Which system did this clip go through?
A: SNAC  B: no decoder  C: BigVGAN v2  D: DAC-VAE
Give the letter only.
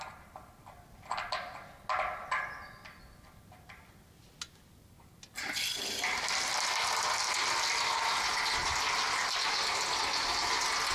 B